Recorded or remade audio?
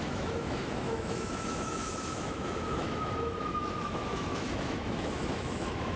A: remade